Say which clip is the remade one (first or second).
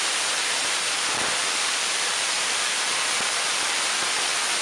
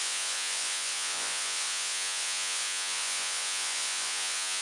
second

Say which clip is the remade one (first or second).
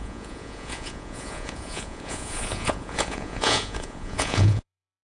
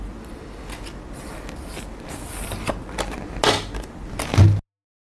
first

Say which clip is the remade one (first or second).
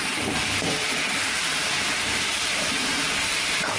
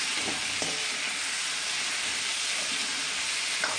first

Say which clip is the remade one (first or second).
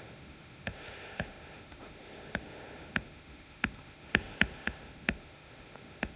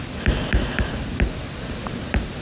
first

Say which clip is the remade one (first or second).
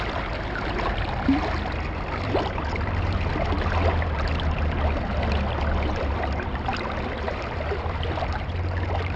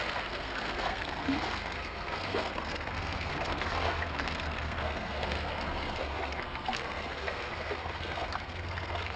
second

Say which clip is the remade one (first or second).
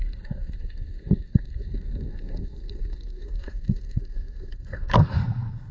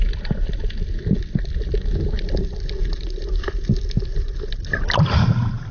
first